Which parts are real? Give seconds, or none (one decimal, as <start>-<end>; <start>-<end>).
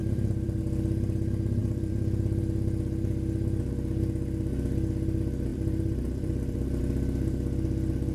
0.6-1.6; 2.4-5.5; 6.8-8.1